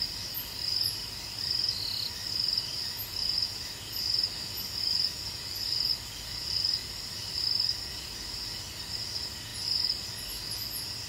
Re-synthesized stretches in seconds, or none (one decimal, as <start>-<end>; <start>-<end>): 5.9-8.1; 9.5-10.1